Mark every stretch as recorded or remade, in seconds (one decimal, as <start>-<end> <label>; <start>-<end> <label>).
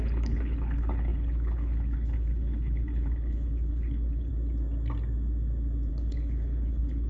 0.0-4.3 remade; 4.3-5.9 recorded; 5.9-7.1 remade